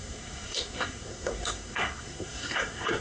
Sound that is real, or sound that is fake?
fake